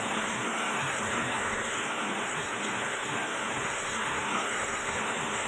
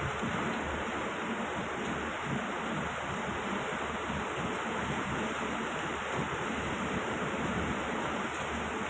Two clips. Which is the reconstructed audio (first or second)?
first